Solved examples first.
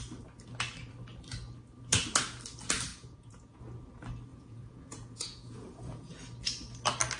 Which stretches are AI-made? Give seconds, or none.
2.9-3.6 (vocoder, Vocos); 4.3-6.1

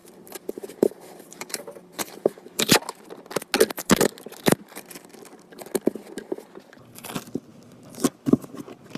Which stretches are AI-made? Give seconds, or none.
0.0-2.7 (vocoder, BigVGAN v2)

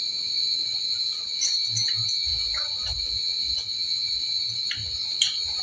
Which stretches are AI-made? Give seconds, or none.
0.0-5.6 (vocoder, BigVGAN v2)

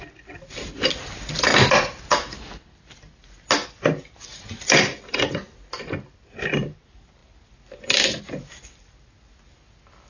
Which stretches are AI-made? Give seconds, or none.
none

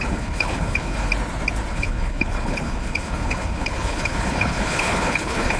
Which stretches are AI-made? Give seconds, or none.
0.0-1.1 (codec, HILCodec); 1.7-5.6

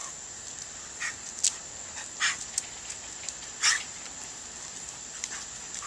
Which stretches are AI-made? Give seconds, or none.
none